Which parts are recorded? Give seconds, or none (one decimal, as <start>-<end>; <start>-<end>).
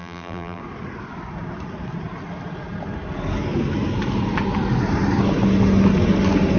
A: 0.6-6.6